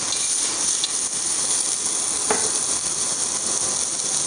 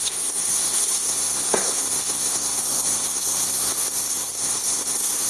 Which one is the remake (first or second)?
second